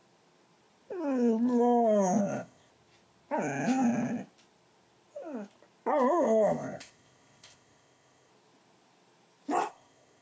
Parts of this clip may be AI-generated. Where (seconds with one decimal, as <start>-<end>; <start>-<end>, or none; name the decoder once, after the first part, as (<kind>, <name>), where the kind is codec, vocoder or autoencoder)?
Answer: 2.2-2.7 (codec, ZipCodec); 6.1-8.3; 9.7-10.2